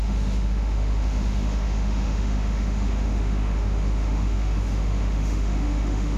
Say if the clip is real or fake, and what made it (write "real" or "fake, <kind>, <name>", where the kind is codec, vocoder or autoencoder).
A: fake, autoencoder, DAC-VAE